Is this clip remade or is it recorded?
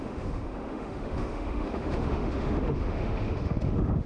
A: remade